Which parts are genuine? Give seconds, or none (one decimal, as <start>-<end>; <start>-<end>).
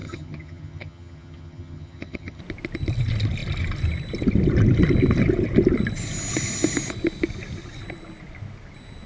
2.4-9.1